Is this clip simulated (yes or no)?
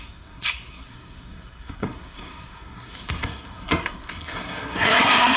yes